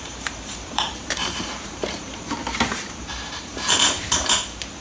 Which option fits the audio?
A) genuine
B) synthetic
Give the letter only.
B